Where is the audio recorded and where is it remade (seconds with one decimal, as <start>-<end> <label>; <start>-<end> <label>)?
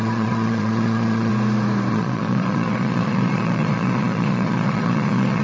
0.0-1.3 remade; 1.3-1.9 recorded; 1.9-5.4 remade